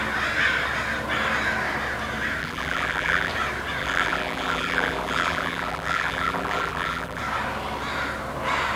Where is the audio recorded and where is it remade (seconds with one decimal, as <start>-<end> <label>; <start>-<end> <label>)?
0.0-2.4 recorded; 2.4-3.3 remade; 3.3-3.8 recorded; 3.8-7.2 remade; 7.2-8.8 recorded